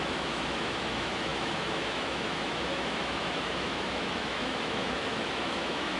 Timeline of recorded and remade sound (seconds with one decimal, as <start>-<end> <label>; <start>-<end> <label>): 0.0-6.0 remade